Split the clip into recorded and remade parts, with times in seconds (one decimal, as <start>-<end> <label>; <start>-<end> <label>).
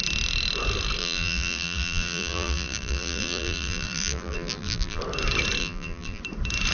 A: 0.0-1.0 recorded; 1.0-5.0 remade; 5.0-5.6 recorded; 5.6-6.2 remade; 6.2-6.7 recorded